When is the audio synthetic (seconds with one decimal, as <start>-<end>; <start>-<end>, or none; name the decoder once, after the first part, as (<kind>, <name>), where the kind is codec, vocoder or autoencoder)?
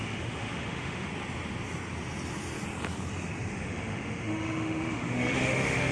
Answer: 0.0-1.1 (autoencoder, DAC-VAE); 3.5-5.9